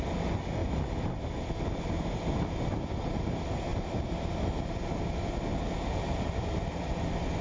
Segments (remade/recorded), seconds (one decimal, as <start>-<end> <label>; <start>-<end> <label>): 0.0-7.4 recorded